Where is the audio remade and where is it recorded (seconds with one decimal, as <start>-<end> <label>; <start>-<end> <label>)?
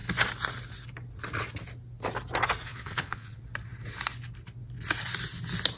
0.0-2.7 recorded; 2.7-3.4 remade; 3.4-5.8 recorded